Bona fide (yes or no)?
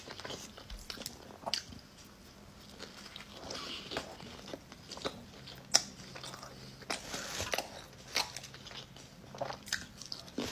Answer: yes